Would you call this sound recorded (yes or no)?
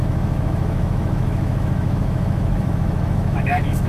no